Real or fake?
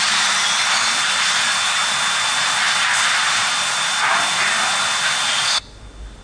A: real